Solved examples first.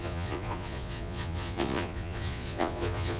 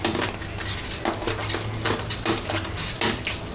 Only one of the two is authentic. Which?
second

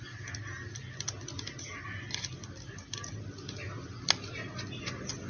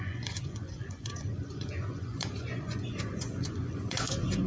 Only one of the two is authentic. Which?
first